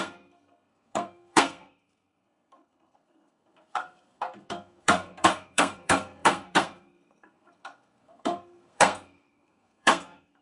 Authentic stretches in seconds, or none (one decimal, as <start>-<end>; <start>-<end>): none